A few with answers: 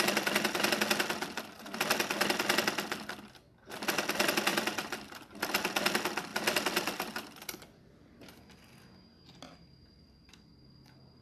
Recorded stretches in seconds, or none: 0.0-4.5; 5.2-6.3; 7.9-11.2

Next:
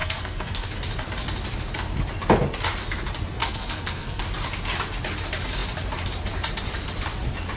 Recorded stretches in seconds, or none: 0.8-3.4; 4.2-7.6

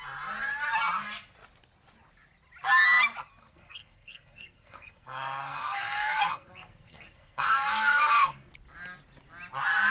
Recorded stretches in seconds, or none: 0.0-3.4; 8.5-9.9

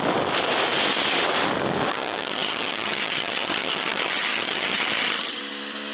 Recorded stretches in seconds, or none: 0.0-1.9; 5.4-5.9

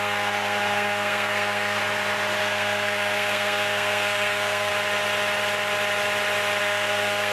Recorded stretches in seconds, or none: 1.8-2.4; 4.7-6.6

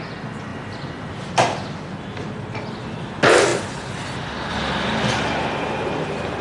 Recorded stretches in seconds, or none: 0.0-6.4

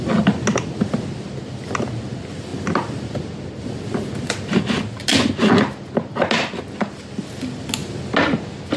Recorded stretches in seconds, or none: 0.0-8.8